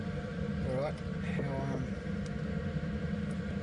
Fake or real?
real